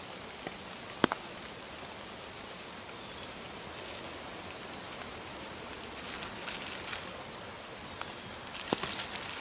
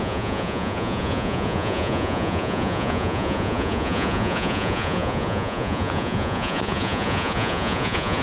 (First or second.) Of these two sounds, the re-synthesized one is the second